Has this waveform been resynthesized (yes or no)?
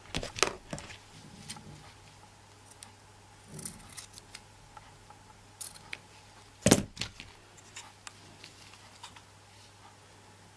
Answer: no